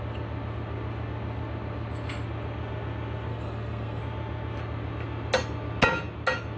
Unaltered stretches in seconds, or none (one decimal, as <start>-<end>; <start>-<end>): 0.0-3.3; 4.0-6.6